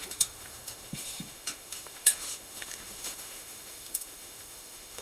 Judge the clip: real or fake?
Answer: fake